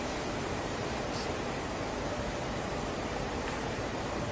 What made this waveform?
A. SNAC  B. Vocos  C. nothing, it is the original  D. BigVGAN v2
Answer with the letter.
D